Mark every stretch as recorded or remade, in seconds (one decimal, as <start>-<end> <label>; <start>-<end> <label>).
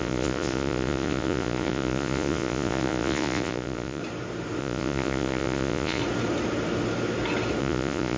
0.0-4.0 remade; 4.0-4.6 recorded; 4.6-6.0 remade; 6.0-7.6 recorded; 7.6-8.2 remade